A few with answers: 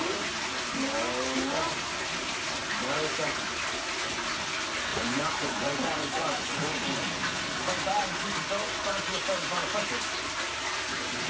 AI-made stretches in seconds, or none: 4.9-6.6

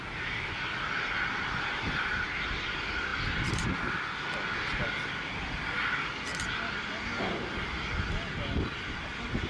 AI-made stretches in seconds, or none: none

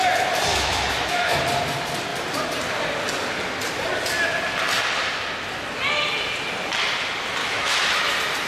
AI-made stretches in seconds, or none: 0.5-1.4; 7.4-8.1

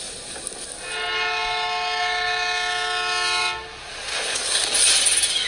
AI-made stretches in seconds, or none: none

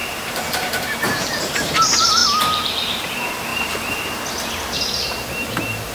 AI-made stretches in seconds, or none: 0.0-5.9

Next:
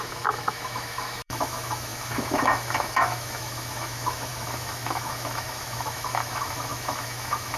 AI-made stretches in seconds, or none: 0.0-7.6

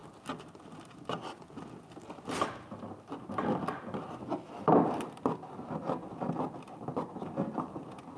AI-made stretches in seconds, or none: none